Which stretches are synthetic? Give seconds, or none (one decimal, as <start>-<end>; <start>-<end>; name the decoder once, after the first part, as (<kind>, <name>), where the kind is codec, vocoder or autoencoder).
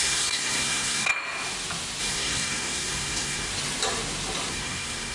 0.0-1.1 (codec, SNAC); 2.0-3.5; 4.5-5.1